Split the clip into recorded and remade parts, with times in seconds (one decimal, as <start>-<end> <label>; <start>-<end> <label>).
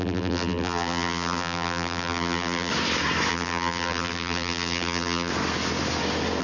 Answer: 0.0-2.7 remade; 2.7-3.3 recorded; 3.3-5.3 remade; 5.3-6.4 recorded